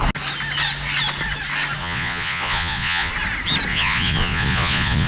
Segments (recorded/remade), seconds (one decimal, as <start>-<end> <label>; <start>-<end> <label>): 0.0-1.8 recorded; 1.8-3.1 remade; 3.1-3.7 recorded; 3.7-5.1 remade